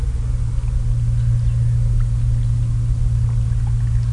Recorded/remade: recorded